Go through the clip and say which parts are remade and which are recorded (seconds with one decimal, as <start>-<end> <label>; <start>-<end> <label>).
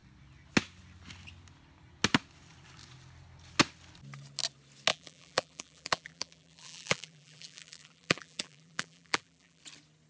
0.0-4.9 recorded; 4.9-9.6 remade; 9.6-10.1 recorded